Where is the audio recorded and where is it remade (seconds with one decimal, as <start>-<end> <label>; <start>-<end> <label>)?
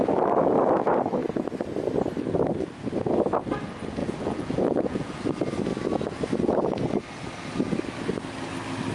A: 0.0-4.0 recorded; 4.0-5.2 remade; 5.2-8.9 recorded